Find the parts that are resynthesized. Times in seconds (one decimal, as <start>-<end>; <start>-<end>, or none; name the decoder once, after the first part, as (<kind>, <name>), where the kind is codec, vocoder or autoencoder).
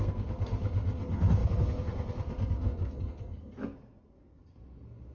0.0-5.1 (codec, SNAC)